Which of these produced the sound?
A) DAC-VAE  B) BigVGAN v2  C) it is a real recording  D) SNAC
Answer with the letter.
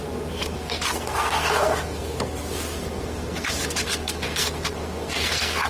D